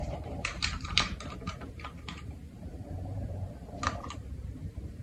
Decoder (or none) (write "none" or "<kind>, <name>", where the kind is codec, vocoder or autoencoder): vocoder, BigVGAN v2